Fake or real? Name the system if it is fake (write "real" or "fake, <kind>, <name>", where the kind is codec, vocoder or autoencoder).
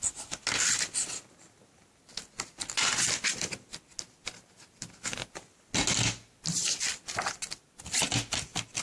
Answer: real